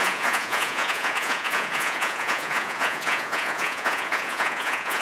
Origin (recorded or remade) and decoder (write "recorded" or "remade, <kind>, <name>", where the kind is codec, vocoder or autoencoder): remade, vocoder, Vocos